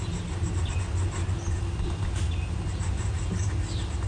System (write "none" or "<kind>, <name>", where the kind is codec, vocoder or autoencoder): none